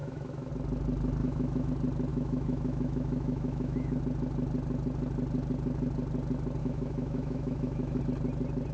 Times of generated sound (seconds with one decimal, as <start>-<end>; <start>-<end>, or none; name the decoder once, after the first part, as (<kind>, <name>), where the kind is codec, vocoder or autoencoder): 0.0-0.5 (autoencoder, DAC-VAE); 1.2-1.7; 2.1-4.0; 6.6-8.0